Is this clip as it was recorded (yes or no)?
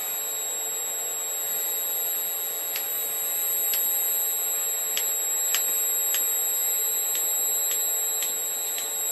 yes